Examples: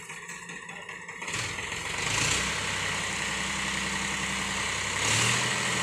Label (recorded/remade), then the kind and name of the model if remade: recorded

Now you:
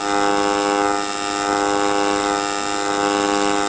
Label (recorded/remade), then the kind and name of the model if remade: recorded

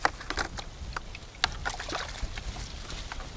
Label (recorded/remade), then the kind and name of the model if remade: recorded